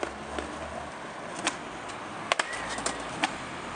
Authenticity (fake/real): real